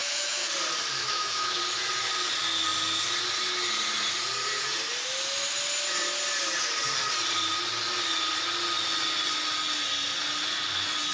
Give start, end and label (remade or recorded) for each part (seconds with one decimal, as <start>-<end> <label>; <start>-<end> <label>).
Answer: 0.0-0.5 remade; 0.5-1.0 recorded; 1.0-1.6 remade; 1.6-11.1 recorded